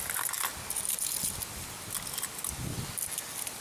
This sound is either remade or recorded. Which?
recorded